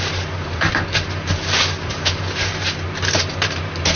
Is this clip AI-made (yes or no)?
yes